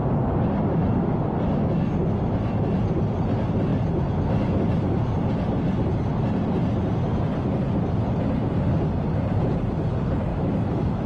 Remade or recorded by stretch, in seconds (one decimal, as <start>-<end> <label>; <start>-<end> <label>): 0.0-10.3 recorded; 10.3-11.1 remade